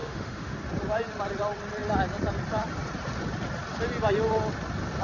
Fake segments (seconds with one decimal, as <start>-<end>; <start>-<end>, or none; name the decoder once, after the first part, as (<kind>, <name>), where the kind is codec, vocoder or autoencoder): 0.0-0.6 (autoencoder, DAC-VAE)